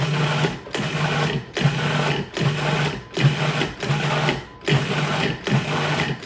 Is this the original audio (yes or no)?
yes